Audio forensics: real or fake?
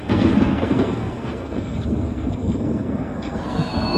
fake